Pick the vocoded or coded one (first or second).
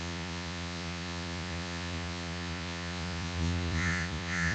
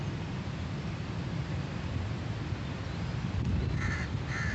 first